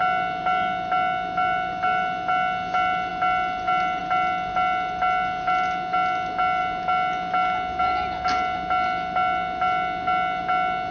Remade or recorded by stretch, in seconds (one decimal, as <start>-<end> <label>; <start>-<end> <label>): 0.0-10.9 recorded